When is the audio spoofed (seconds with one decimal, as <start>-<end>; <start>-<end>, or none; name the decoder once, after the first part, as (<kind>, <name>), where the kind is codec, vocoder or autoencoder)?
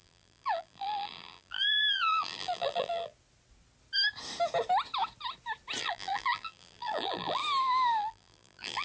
0.0-3.1 (vocoder, BigVGAN v2); 5.8-7.4; 8.0-8.8